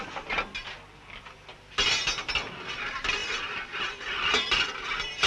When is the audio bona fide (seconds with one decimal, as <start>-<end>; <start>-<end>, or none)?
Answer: 0.0-3.2; 3.8-5.3